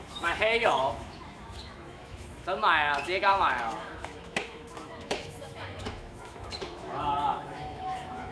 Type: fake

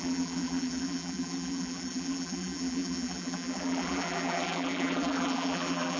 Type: fake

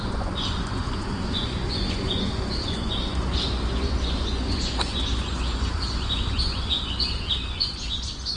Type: fake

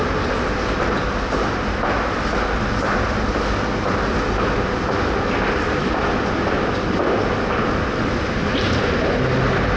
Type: real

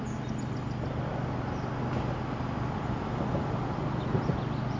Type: real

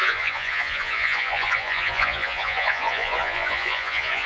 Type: fake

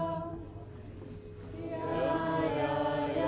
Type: real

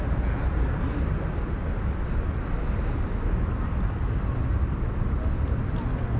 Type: real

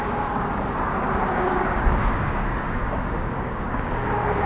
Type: fake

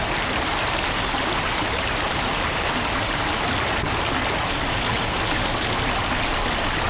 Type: real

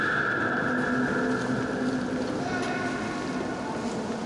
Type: real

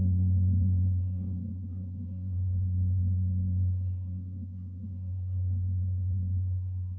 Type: fake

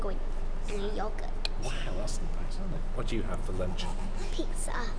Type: real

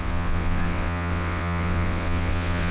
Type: fake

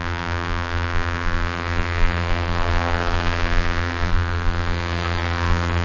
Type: fake